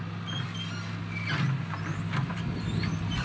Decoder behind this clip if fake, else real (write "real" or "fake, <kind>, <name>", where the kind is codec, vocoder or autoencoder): real